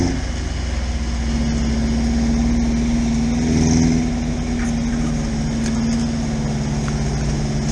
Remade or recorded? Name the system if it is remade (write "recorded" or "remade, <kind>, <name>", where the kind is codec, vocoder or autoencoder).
recorded